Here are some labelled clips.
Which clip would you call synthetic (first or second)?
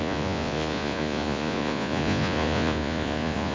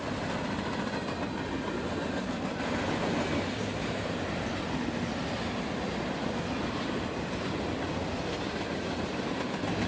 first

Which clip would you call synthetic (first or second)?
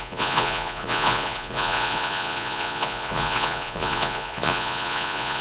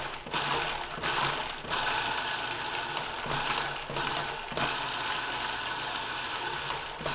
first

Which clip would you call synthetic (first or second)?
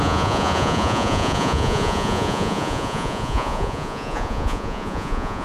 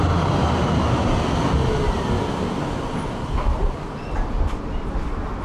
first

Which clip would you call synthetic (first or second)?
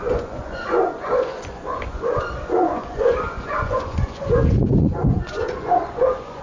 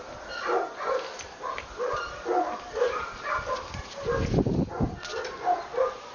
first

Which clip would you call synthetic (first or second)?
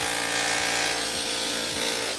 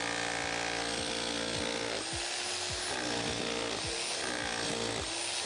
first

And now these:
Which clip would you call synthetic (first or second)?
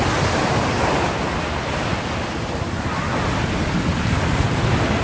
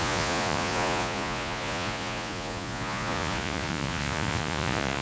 second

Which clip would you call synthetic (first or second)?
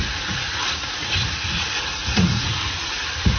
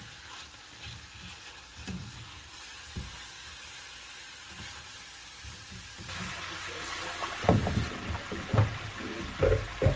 first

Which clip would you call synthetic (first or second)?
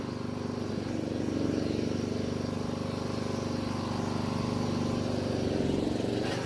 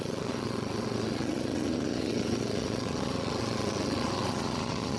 second